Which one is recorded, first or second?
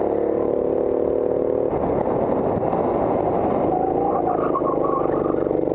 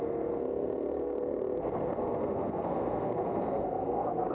first